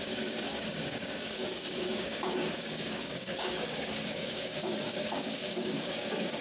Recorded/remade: remade